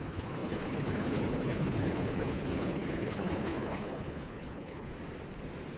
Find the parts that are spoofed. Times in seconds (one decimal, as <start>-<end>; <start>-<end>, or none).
0.0-4.9